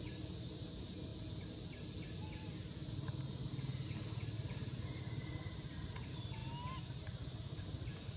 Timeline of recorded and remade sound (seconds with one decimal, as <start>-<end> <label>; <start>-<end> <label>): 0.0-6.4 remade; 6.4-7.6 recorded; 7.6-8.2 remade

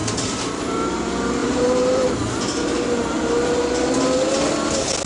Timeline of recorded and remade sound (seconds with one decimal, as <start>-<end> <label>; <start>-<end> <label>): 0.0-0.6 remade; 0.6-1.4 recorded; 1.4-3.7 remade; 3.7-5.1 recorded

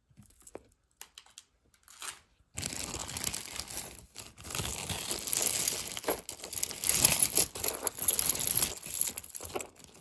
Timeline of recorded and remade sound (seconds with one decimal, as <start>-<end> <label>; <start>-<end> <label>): 0.0-10.0 recorded

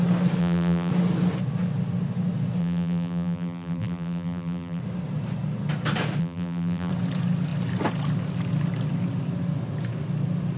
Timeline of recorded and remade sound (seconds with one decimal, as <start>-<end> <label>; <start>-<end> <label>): 0.0-0.4 recorded; 0.4-0.9 remade; 0.9-2.6 recorded; 2.6-4.8 remade; 4.8-6.2 recorded; 6.2-6.9 remade; 6.9-10.6 recorded

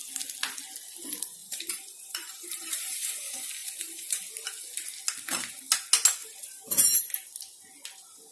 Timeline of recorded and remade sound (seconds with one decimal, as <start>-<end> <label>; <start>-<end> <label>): 0.0-1.4 recorded; 1.4-3.2 remade; 3.2-3.6 recorded; 3.6-4.2 remade; 4.2-6.2 recorded; 6.2-7.0 remade; 7.0-8.3 recorded